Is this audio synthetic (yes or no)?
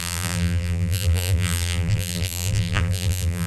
yes